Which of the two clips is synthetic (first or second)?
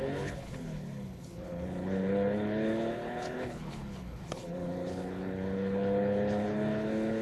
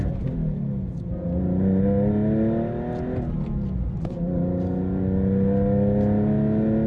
first